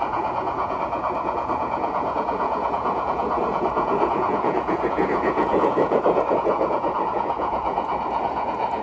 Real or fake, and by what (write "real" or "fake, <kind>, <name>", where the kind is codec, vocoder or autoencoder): fake, vocoder, Vocos